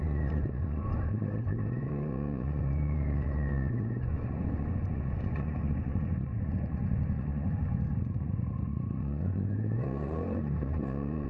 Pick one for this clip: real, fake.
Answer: fake